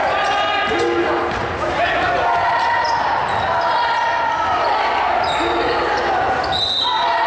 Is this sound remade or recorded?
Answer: recorded